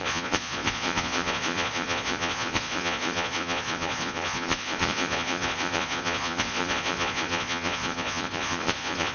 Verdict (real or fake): fake